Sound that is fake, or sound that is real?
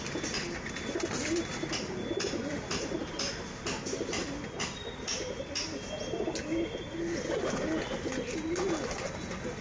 real